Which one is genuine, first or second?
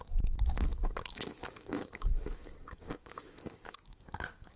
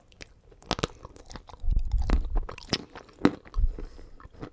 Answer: second